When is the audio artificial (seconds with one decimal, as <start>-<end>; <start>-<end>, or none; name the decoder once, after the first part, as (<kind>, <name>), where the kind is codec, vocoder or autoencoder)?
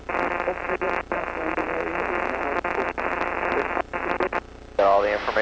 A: none